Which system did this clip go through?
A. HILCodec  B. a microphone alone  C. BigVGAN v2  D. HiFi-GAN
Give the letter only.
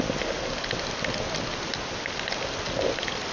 B